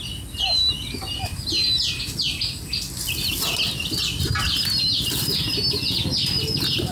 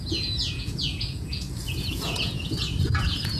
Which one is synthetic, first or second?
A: second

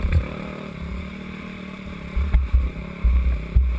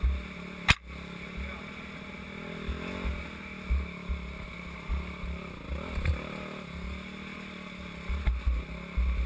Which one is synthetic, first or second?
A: first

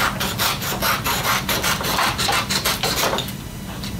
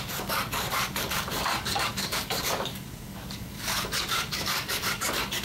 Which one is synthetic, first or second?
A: second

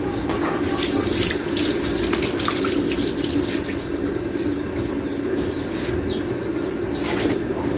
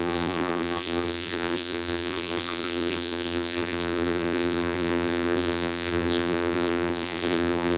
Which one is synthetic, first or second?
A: second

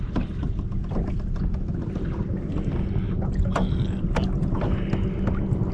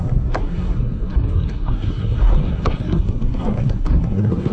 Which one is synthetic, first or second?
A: second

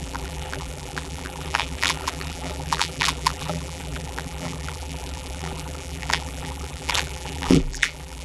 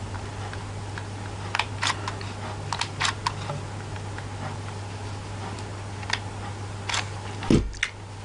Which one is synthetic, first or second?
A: first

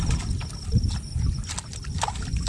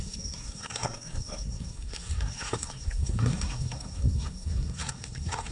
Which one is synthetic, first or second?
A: second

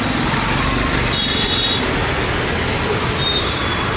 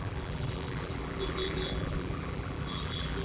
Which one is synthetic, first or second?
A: second